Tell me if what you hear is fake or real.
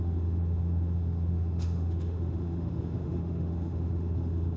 fake